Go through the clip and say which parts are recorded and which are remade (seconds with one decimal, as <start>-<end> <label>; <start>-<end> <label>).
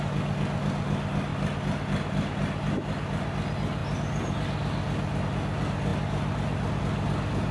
0.0-7.5 recorded